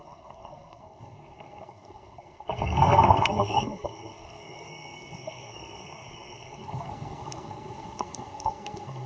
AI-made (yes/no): yes